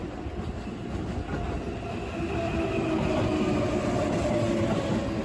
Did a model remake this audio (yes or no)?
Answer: no